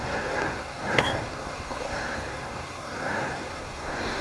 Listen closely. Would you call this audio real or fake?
fake